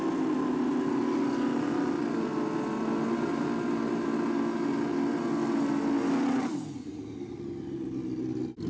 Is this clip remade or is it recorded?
recorded